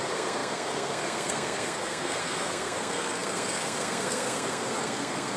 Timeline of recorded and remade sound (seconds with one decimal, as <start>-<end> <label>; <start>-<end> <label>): 0.0-5.4 remade